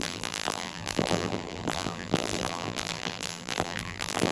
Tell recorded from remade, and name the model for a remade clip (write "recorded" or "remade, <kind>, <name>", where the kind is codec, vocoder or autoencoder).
remade, vocoder, BigVGAN v2